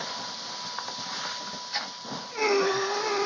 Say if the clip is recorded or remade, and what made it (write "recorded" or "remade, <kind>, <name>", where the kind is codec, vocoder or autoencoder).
recorded